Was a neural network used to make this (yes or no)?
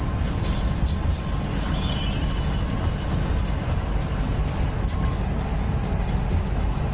no